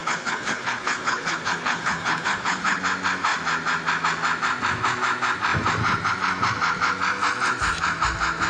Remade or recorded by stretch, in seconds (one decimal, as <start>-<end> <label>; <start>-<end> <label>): 0.0-2.8 remade; 2.8-8.5 recorded